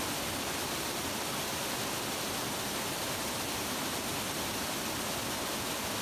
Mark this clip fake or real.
real